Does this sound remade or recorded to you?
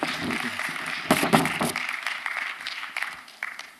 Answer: recorded